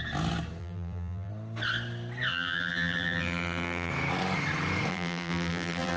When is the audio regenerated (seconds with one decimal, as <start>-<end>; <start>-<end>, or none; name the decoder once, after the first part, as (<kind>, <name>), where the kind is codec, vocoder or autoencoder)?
0.6-1.3 (vocoder, BigVGAN v2); 2.3-3.9; 4.9-6.0